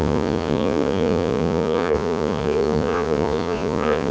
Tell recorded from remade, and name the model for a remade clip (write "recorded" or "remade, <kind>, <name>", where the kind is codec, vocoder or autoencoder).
remade, vocoder, Vocos